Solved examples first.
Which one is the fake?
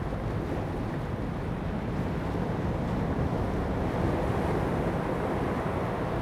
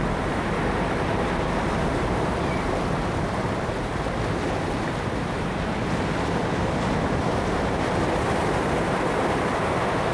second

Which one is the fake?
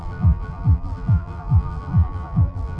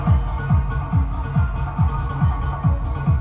first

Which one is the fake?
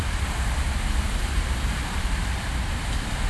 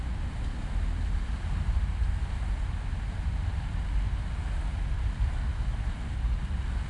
first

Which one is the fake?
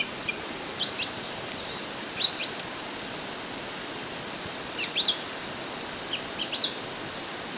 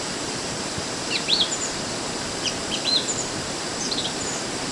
second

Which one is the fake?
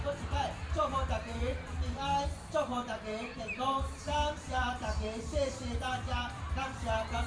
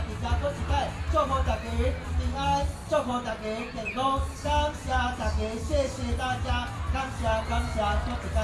first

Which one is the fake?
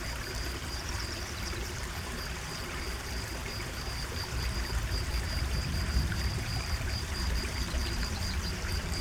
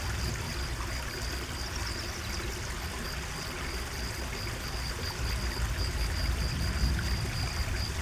first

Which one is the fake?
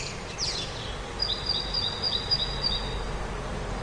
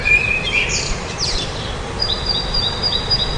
second